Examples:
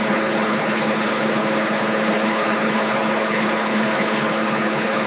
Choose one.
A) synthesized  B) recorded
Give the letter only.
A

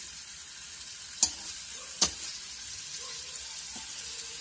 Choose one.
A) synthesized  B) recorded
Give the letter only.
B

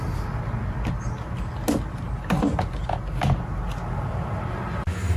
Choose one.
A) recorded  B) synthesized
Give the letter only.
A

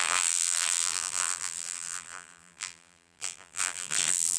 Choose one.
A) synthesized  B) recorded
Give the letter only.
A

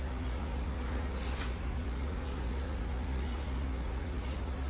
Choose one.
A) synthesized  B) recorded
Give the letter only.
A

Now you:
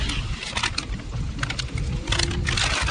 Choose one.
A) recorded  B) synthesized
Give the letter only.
A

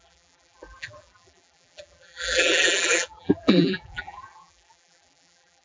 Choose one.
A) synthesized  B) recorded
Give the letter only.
A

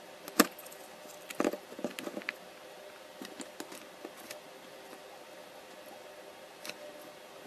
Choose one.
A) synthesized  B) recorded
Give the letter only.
B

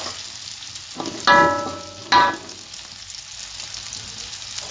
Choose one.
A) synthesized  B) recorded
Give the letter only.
B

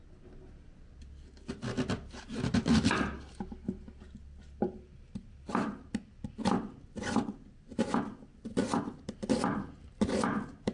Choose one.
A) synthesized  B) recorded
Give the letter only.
B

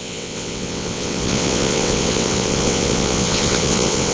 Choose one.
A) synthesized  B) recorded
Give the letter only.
A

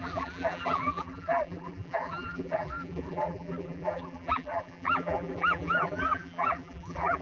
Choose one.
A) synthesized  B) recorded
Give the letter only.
A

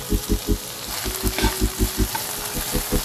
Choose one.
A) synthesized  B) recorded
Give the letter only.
B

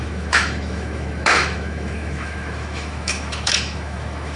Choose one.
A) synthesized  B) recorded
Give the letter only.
A